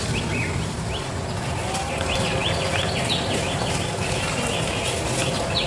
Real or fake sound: real